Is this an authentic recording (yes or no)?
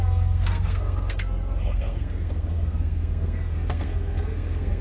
no